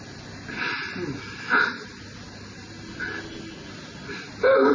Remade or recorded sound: recorded